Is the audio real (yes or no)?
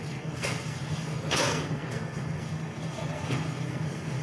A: no